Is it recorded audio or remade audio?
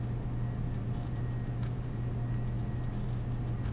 recorded